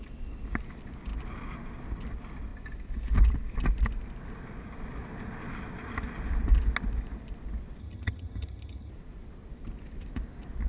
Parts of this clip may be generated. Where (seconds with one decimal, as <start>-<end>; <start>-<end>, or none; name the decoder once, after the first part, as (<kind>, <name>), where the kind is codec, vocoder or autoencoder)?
7.8-8.9 (vocoder, HiFi-GAN)